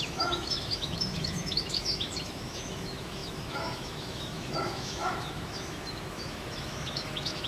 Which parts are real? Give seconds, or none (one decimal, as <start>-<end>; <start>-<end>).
none